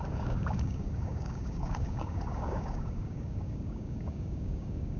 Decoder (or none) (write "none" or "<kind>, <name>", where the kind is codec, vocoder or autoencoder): codec, DAC